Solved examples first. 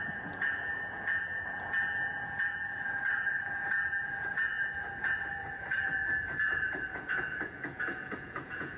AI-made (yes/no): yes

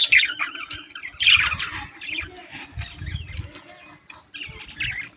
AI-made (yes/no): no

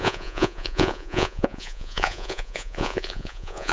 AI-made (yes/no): yes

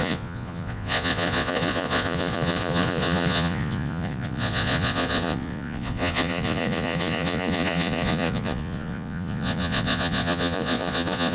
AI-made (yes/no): yes